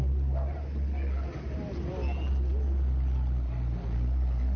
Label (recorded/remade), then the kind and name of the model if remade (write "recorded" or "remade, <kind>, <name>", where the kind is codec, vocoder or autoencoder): recorded